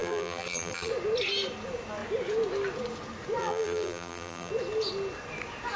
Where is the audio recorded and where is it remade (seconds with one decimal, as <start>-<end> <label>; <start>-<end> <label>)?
0.0-0.9 remade; 0.9-3.4 recorded; 3.4-4.5 remade; 4.5-5.8 recorded